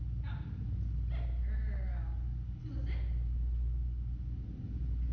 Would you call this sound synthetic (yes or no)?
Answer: no